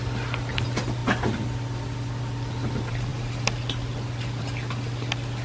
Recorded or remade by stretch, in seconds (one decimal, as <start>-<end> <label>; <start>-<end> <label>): 0.0-5.4 recorded